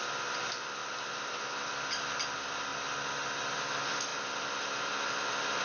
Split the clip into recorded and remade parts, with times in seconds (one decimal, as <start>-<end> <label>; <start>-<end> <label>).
0.0-0.8 recorded; 0.8-1.4 remade; 1.4-5.6 recorded